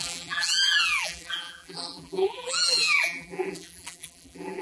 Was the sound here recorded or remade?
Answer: remade